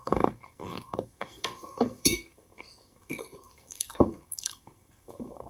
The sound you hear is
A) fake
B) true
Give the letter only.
A